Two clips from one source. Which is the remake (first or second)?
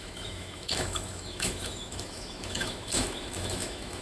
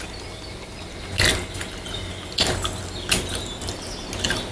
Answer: first